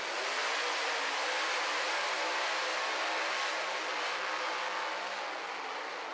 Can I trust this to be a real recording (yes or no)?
yes